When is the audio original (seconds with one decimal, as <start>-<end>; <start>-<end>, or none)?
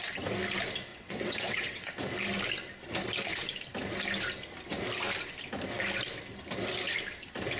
0.0-0.9; 1.9-7.6